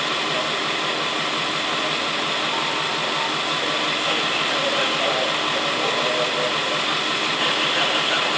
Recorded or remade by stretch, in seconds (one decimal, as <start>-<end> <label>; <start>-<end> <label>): 0.0-8.4 recorded